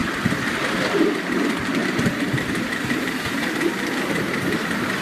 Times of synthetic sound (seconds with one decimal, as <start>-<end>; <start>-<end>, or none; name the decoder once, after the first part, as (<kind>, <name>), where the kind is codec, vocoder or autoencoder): 1.8-5.0 (vocoder, BigVGAN v2)